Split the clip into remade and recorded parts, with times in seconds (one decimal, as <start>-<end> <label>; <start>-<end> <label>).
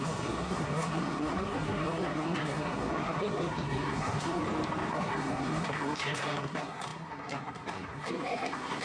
0.0-4.4 remade; 4.4-4.9 recorded; 4.9-8.8 remade